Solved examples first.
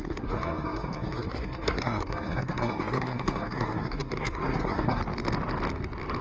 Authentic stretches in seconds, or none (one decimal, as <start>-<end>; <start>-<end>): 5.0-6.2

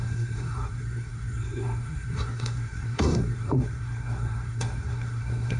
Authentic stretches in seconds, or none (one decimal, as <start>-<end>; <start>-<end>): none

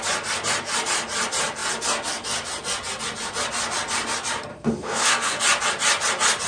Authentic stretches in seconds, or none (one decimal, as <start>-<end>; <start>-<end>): 0.0-4.5; 5.4-6.5

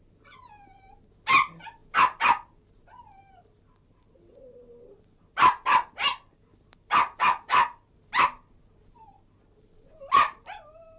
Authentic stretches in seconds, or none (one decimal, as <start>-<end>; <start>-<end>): 0.0-11.0

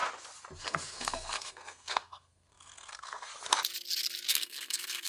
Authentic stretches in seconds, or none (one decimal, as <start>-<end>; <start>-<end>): 0.0-0.6; 3.3-4.3

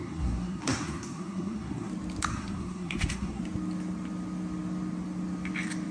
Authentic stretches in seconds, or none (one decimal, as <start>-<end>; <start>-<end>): 1.9-2.3; 3.4-5.9

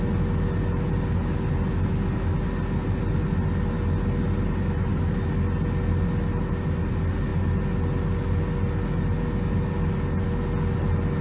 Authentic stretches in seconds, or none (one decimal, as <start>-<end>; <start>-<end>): 0.0-11.2